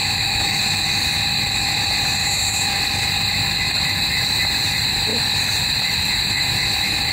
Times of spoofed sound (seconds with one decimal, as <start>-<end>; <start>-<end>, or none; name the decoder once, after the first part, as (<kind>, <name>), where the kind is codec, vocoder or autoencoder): 0.0-0.6 (autoencoder, DAC-VAE); 2.2-2.8